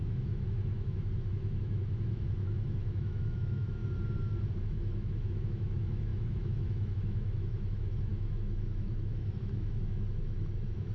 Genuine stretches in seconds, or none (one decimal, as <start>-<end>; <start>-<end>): 3.8-4.5